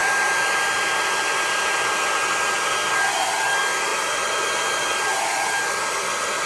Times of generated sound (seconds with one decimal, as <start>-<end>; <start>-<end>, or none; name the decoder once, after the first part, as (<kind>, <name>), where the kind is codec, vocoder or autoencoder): 0.0-2.9 (vocoder, BigVGAN v2); 3.9-4.8

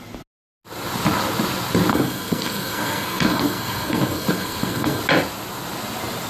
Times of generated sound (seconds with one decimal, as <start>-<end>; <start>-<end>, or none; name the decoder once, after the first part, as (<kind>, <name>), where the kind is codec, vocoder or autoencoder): 1.9-5.0 (codec, SNAC)

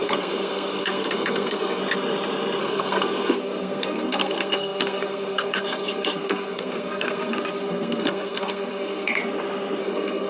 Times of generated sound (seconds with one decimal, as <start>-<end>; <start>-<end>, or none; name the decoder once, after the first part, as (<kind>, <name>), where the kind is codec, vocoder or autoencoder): 0.0-1.8 (codec, SNAC); 2.6-9.2; 9.8-10.3

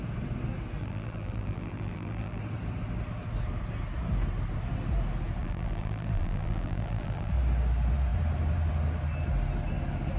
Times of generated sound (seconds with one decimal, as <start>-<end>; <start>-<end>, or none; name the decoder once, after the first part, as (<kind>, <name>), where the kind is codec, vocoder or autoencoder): 0.8-2.4 (vocoder, BigVGAN v2); 5.4-7.3

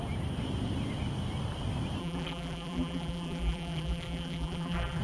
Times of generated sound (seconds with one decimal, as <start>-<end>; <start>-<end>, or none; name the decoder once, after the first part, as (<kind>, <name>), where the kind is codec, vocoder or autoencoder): 2.0-5.0 (vocoder, BigVGAN v2)

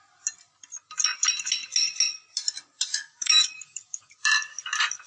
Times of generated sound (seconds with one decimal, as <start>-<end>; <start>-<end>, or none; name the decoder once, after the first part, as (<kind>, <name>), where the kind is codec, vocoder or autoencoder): 2.9-4.1 (codec, DAC)